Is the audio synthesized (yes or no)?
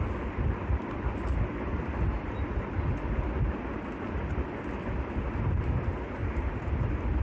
no